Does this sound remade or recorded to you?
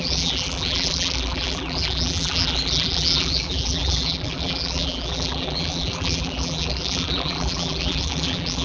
remade